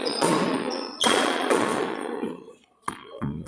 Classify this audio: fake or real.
fake